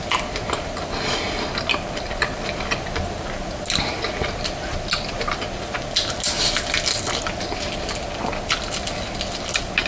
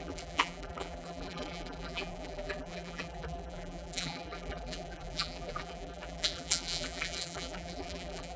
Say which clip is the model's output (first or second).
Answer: second